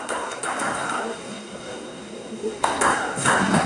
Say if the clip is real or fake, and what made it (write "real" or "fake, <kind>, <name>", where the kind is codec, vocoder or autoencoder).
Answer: fake, codec, SNAC